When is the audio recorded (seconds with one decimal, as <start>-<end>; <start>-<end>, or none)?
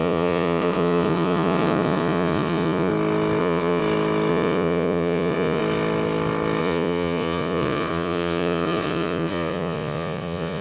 2.9-3.4; 3.8-4.3; 5.6-6.6